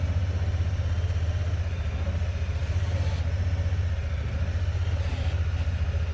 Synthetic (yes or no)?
no